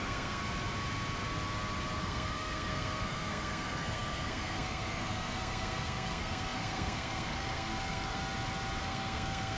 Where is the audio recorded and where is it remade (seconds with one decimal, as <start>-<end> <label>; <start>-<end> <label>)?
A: 0.0-0.4 remade; 0.4-2.0 recorded; 2.0-8.2 remade; 8.2-8.8 recorded; 8.8-9.6 remade